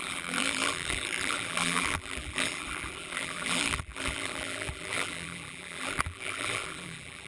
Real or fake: fake